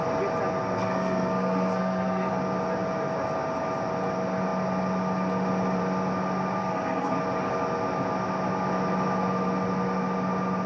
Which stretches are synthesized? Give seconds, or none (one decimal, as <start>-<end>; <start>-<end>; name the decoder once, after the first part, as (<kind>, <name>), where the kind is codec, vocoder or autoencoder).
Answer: 0.6-2.3 (codec, SNAC); 6.6-7.2